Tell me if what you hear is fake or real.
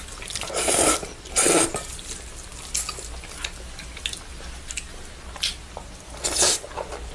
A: real